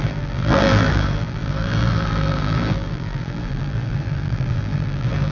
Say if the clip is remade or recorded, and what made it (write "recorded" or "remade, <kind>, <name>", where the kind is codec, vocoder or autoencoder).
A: remade, vocoder, BigVGAN v2